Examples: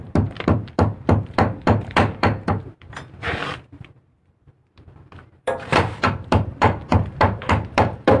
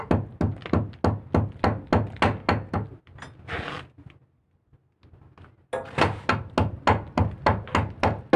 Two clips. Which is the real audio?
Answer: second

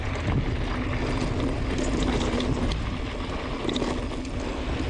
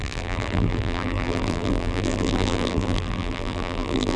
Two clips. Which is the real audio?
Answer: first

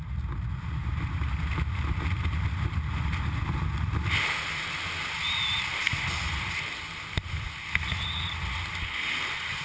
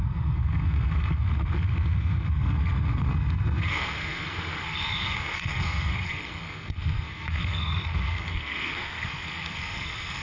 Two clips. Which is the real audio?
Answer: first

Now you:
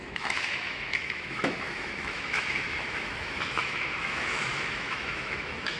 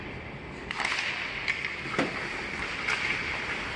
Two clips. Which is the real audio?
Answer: second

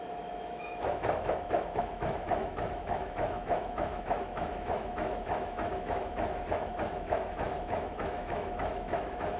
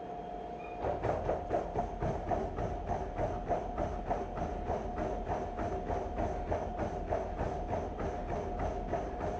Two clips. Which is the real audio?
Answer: second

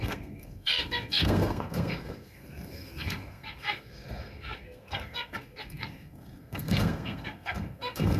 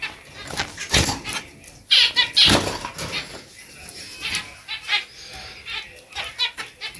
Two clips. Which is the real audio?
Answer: second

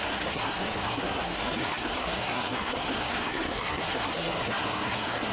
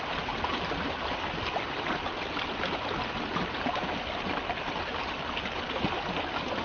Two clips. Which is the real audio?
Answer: second